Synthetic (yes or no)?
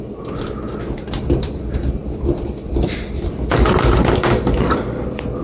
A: yes